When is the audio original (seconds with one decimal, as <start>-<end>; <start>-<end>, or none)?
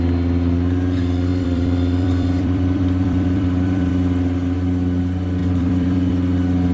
0.0-1.3; 3.9-5.4; 6.1-6.7